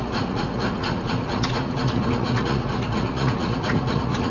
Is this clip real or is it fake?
fake